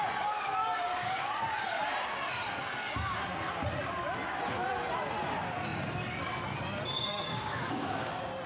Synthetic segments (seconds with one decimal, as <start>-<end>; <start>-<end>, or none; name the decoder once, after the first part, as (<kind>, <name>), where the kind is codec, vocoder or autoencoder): 0.6-1.4 (codec, DAC); 7.1-8.1